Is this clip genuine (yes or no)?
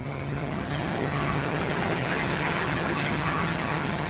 no